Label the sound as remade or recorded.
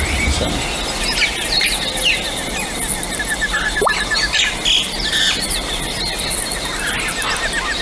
recorded